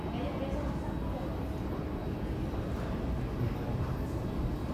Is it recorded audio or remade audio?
recorded